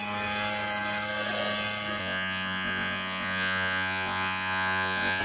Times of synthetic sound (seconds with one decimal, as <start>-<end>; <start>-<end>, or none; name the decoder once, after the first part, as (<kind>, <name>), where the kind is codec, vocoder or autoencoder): 2.0-5.2 (vocoder, Vocos)